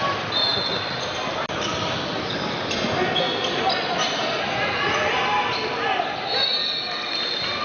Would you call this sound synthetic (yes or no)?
no